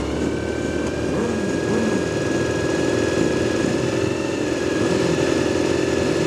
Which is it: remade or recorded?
recorded